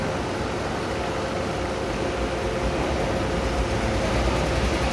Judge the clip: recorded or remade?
recorded